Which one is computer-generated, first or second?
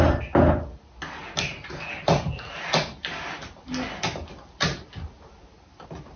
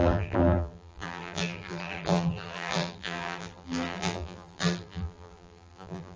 second